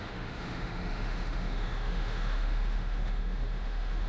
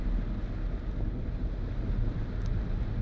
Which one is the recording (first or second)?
second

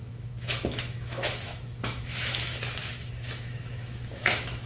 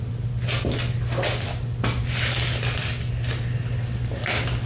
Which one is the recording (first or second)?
second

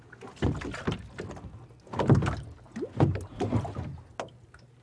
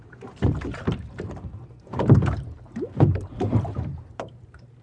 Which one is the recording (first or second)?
first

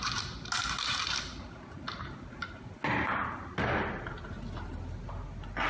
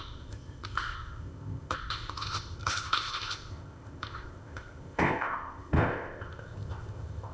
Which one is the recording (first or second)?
first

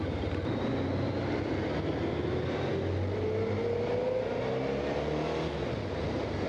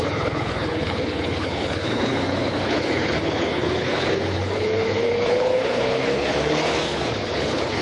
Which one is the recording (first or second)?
first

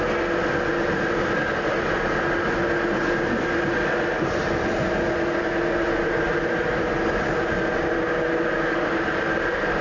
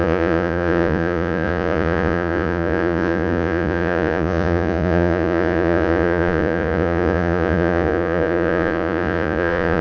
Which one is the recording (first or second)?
first